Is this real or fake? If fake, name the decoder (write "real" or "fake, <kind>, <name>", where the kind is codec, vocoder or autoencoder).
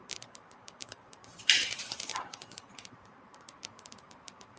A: fake, vocoder, BigVGAN v2